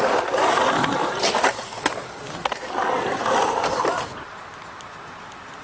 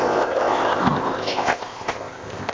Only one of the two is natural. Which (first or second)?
first